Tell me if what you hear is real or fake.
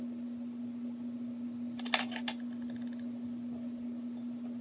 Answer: real